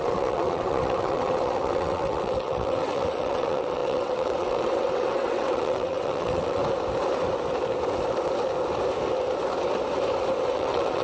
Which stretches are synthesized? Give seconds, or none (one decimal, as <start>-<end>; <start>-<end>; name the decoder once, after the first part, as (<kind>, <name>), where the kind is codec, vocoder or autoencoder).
0.0-6.6 (vocoder, WaveNeXt); 10.5-11.0